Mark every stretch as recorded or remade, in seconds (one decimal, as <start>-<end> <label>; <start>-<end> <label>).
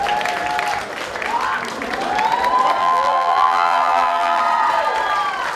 0.0-2.8 recorded; 2.8-4.4 remade; 4.4-5.6 recorded